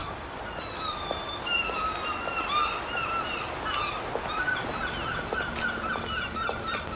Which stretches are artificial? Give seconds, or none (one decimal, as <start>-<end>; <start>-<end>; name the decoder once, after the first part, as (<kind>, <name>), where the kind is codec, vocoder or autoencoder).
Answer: 0.0-1.4 (vocoder, BigVGAN v2)